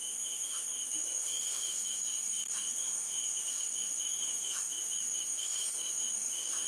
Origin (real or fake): fake